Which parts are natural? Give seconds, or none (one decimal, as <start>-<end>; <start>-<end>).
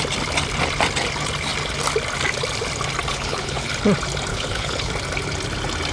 0.0-3.1; 3.7-4.3; 4.9-5.9